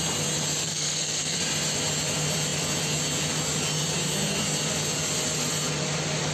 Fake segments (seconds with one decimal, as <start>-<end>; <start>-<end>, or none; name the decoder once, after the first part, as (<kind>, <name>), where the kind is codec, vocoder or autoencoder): 0.6-1.4 (codec, SNAC)